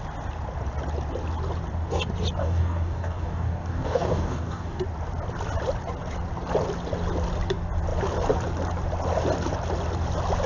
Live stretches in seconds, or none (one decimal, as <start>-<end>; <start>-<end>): 0.0-2.4; 4.8-10.5